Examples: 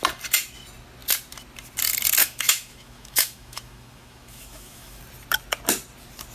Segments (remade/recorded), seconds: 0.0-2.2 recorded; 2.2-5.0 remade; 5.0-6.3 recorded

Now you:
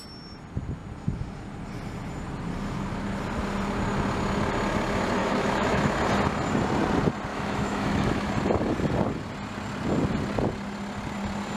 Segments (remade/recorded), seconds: 0.0-5.2 recorded; 5.2-6.0 remade; 6.0-7.3 recorded; 7.3-8.3 remade; 8.3-11.6 recorded